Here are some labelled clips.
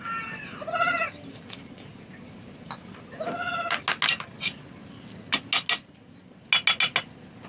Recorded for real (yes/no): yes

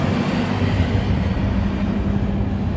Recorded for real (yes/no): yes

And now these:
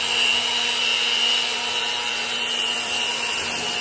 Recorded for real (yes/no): no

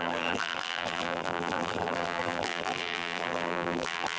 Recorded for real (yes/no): no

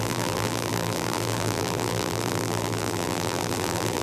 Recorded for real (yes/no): no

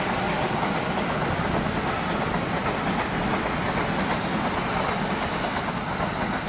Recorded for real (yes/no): yes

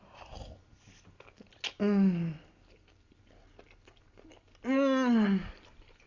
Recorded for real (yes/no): yes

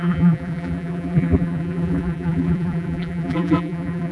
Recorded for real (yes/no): no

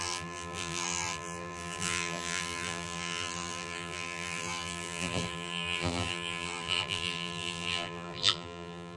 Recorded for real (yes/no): no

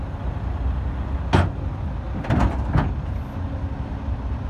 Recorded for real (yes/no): yes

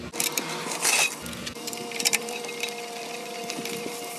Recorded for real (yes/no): no